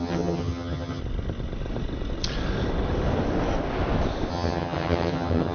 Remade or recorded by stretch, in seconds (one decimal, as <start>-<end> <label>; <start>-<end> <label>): 0.0-1.0 remade; 1.0-4.3 recorded; 4.3-5.5 remade